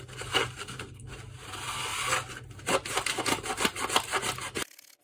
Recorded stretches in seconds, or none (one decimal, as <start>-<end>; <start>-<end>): 0.0-0.6; 1.1-5.0